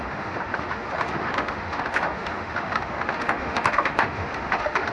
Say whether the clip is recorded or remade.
remade